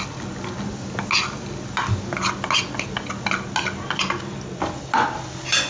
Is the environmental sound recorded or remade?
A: recorded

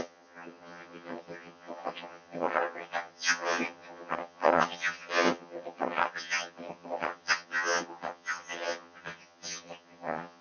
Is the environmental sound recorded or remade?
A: remade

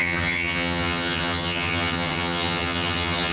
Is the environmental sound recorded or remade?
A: remade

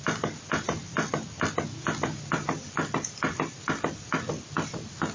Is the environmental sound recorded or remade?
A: recorded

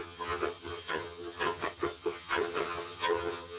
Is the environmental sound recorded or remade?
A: remade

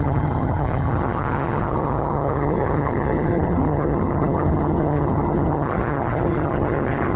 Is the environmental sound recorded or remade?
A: remade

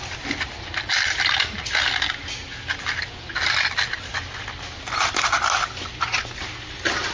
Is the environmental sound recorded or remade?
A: recorded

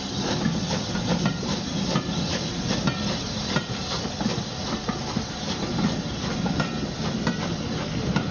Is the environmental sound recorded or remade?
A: recorded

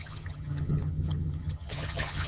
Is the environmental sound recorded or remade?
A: remade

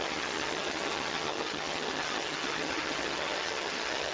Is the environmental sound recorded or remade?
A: remade